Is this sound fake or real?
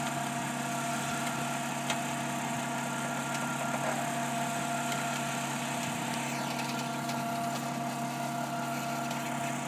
real